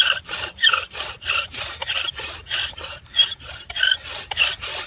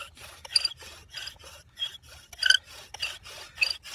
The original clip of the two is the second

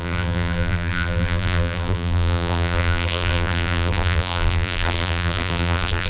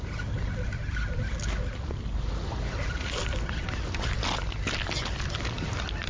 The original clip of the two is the second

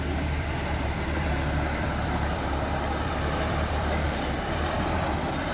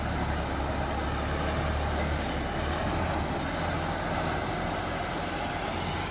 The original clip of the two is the second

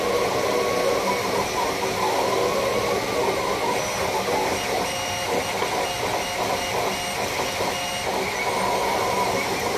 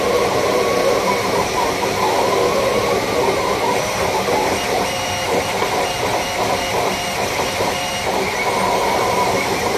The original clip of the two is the first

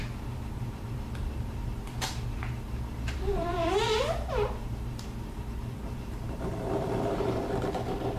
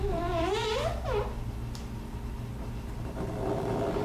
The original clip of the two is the second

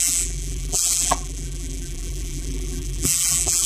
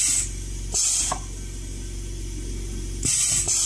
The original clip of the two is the second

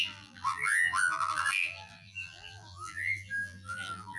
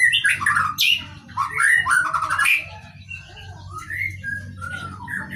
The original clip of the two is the second